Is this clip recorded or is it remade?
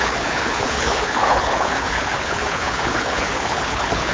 remade